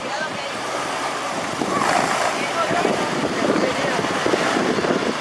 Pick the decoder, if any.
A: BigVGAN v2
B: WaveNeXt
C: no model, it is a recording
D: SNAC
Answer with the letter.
A